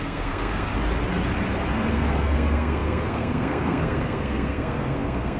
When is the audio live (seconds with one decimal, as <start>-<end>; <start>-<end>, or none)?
0.7-1.9